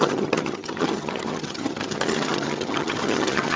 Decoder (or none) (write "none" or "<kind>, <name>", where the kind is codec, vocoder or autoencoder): vocoder, HiFi-GAN